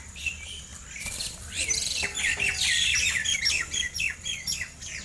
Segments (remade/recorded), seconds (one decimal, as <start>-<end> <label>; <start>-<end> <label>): 0.0-0.7 recorded; 0.7-3.7 remade; 3.7-5.0 recorded